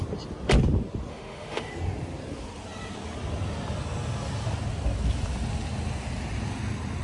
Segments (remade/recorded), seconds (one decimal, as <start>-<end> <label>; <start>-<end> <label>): 0.0-1.1 recorded; 1.1-1.7 remade; 1.7-7.0 recorded

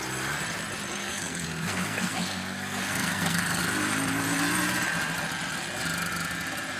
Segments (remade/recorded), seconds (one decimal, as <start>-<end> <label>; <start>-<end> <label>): 0.0-1.0 recorded; 1.0-3.6 remade; 3.6-6.8 recorded

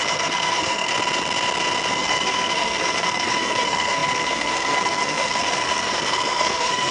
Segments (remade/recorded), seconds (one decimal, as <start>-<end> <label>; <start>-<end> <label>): 0.0-0.9 remade; 0.9-1.9 recorded; 1.9-6.9 remade

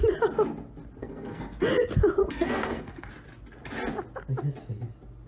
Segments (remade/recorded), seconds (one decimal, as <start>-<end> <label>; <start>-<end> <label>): 0.0-1.0 recorded; 1.0-1.7 remade; 1.7-2.2 recorded; 2.2-3.1 remade; 3.1-5.3 recorded

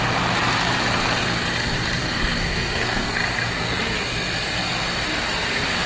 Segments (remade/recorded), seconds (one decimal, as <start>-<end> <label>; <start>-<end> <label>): 0.0-2.0 recorded; 2.0-3.1 remade; 3.1-5.9 recorded

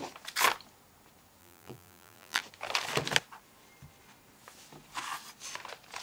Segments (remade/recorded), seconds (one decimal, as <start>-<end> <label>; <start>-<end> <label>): 0.0-1.4 recorded; 1.4-2.4 remade; 2.4-6.0 recorded

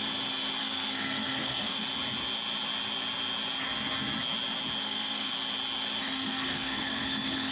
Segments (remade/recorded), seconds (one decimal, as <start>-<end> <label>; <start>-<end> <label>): 0.0-0.6 recorded; 0.6-1.8 remade; 1.8-4.8 recorded; 4.8-5.3 remade; 5.3-6.0 recorded; 6.0-7.5 remade

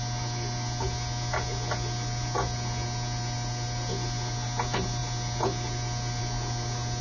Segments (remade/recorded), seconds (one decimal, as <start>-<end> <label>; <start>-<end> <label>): 0.0-7.0 recorded